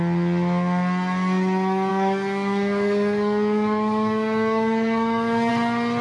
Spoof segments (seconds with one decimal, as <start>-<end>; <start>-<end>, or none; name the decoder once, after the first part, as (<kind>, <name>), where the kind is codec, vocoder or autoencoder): 1.9-5.5 (codec, DAC)